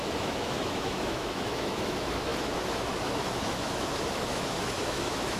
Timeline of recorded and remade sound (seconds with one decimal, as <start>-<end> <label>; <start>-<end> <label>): 0.0-5.4 remade